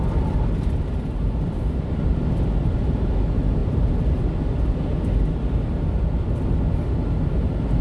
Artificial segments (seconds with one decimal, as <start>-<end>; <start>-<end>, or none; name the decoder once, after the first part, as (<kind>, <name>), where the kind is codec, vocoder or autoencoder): none